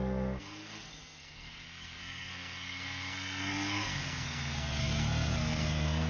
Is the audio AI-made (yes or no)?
yes